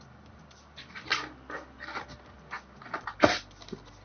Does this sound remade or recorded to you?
recorded